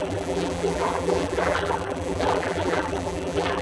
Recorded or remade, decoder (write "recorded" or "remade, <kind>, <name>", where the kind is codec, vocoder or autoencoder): remade, vocoder, BigVGAN v2